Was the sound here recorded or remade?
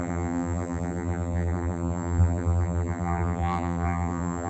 remade